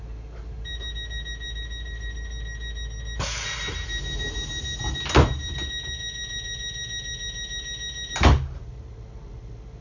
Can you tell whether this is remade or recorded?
recorded